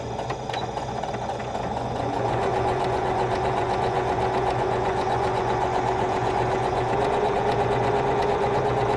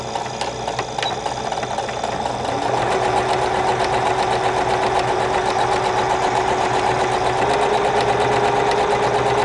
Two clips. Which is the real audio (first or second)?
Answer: second